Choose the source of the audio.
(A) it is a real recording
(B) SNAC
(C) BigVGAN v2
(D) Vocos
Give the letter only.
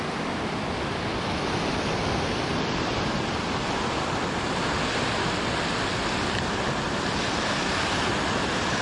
A